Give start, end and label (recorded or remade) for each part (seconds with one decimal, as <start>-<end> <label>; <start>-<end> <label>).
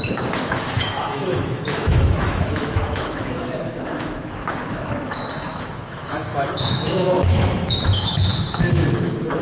0.0-9.4 remade